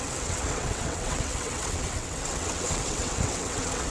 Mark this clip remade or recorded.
remade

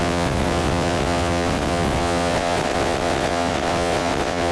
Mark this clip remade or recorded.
remade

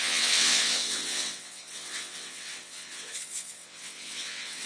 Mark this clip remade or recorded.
remade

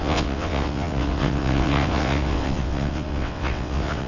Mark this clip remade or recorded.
remade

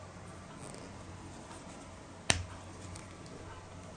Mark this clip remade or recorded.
recorded